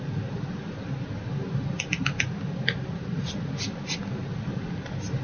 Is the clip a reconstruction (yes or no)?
no